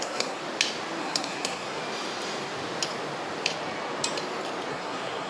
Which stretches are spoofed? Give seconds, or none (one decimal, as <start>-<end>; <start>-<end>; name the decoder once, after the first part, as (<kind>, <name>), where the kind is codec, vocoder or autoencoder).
0.0-0.4 (codec, SNAC); 1.0-1.8; 4.7-5.3